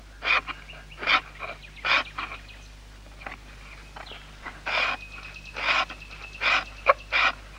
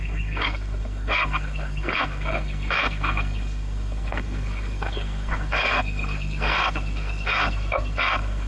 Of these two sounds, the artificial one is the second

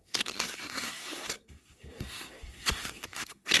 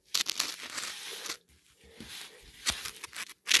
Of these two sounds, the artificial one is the first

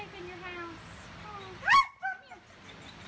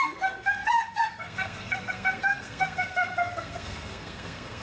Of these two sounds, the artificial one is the second